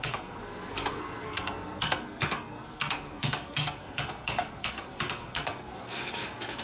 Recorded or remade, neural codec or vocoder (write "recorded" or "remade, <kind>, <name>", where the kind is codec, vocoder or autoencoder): remade, codec, SNAC